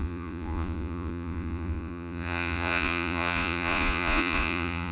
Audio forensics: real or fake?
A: fake